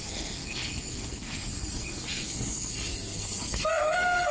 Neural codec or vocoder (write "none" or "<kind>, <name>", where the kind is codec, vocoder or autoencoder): codec, SNAC